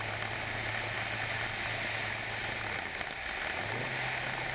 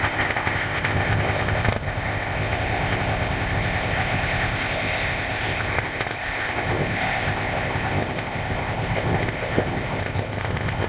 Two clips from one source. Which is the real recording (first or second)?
first